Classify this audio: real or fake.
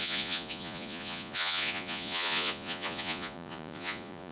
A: fake